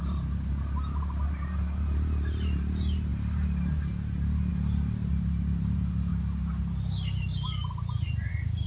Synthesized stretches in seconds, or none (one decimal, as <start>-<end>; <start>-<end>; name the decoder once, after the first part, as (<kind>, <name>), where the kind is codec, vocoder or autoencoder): none